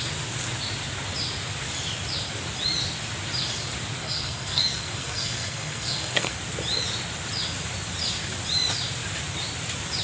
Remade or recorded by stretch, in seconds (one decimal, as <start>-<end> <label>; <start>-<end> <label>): 0.0-4.0 recorded; 4.0-6.4 remade; 6.4-10.0 recorded